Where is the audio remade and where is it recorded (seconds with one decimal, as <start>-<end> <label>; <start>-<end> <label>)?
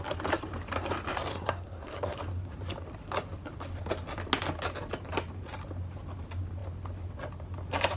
0.0-1.3 recorded; 1.3-2.2 remade; 2.2-8.0 recorded